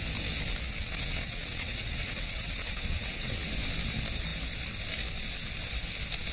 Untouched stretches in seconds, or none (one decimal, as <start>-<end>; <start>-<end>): 0.0-0.8; 3.3-6.3